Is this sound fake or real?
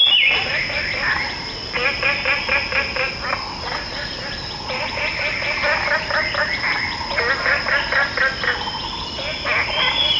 real